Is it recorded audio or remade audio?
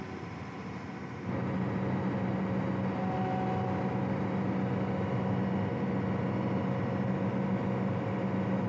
recorded